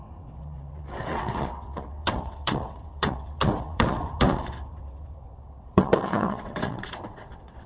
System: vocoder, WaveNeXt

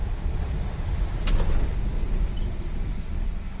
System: none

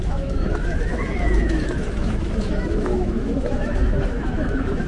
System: autoencoder, DAC-VAE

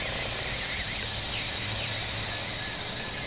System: none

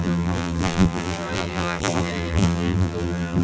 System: vocoder, BigVGAN v2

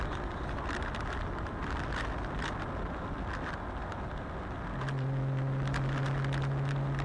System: none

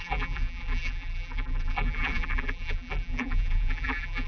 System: vocoder, BigVGAN v2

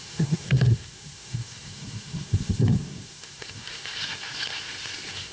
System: codec, SNAC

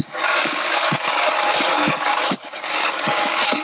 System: codec, DAC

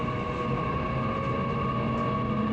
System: none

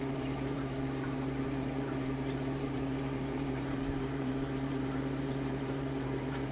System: vocoder, BigVGAN v2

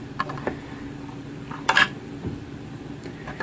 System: vocoder, BigVGAN v2